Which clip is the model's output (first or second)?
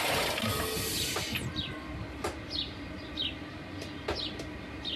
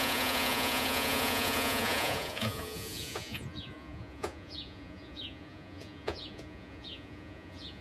second